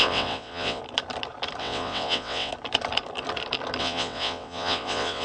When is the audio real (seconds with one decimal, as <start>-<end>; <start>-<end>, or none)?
0.8-1.6; 2.5-3.8